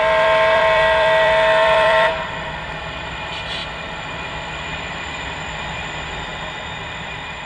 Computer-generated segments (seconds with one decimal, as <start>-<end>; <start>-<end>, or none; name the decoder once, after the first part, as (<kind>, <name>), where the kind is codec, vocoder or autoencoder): 0.0-3.6 (vocoder, BigVGAN v2); 4.1-6.3; 7.0-7.5